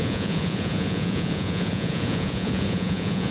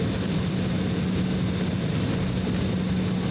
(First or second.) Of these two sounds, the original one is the second